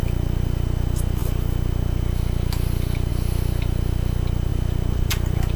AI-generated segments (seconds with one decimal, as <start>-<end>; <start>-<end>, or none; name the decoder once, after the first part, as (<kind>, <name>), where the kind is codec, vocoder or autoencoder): none

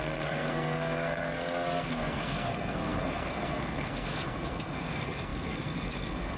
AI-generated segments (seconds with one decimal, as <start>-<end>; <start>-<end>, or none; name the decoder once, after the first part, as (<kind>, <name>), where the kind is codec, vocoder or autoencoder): 0.0-6.4 (codec, SNAC)